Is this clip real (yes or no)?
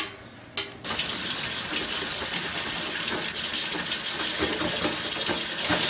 yes